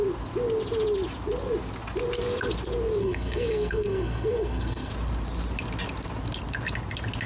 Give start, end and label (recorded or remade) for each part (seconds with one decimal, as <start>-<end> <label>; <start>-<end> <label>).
0.0-3.0 recorded; 3.0-4.9 remade; 4.9-7.3 recorded